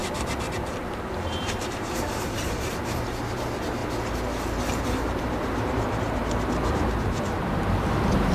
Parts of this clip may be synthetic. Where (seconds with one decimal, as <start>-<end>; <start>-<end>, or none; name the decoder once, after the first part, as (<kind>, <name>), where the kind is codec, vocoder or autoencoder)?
0.0-3.8 (vocoder, BigVGAN v2); 5.1-8.3